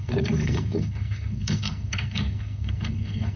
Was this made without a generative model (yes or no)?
no